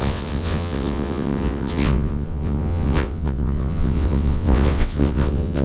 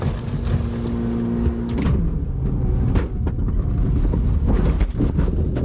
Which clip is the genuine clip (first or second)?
second